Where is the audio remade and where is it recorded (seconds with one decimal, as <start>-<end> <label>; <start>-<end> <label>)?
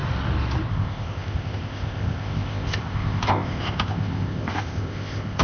0.0-0.7 recorded; 0.7-5.4 remade